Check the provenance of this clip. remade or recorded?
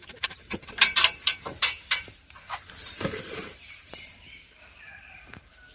remade